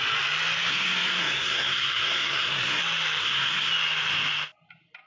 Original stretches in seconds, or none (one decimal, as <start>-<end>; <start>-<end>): 0.0-0.7; 2.8-3.2; 3.7-5.1